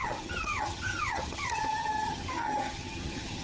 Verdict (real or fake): fake